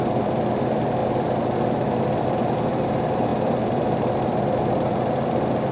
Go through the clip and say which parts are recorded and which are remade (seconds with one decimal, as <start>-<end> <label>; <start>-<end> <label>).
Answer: 0.0-5.7 remade